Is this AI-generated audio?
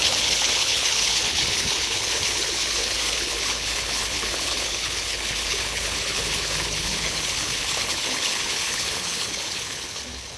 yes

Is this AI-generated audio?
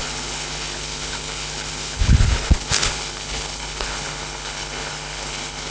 yes